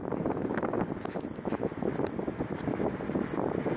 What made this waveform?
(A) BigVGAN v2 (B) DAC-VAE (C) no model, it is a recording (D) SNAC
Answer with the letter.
C